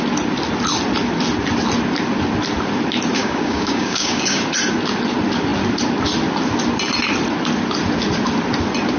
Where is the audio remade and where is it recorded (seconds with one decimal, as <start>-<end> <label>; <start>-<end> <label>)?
0.0-3.2 recorded; 3.2-4.4 remade; 4.4-9.0 recorded